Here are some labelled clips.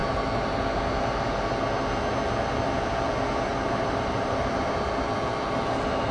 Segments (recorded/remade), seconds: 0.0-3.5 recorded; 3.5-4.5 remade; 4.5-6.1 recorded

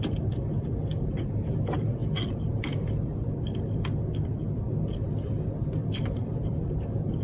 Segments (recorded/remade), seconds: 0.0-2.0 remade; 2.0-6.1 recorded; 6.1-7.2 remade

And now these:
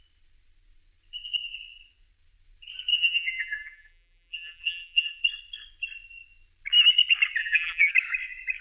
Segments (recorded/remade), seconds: 0.0-2.9 recorded; 2.9-5.2 remade; 5.2-7.4 recorded; 7.4-7.9 remade; 7.9-8.6 recorded

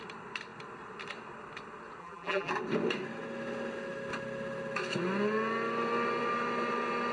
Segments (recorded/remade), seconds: 0.0-2.0 recorded; 2.0-2.5 remade; 2.5-7.1 recorded

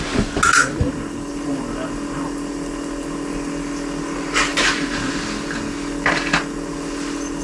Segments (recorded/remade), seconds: 0.0-0.6 recorded; 0.6-1.3 remade; 1.3-7.4 recorded

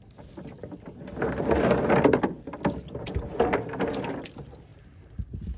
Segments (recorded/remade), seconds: 0.0-5.6 recorded

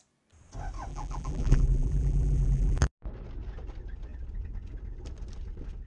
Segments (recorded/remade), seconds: 0.0-0.9 recorded; 0.9-2.9 remade; 2.9-5.9 recorded

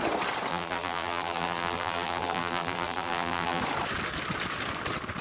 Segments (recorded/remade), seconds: 0.0-0.5 recorded; 0.5-3.6 remade; 3.6-5.2 recorded